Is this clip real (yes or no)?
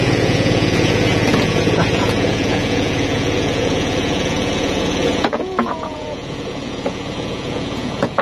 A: no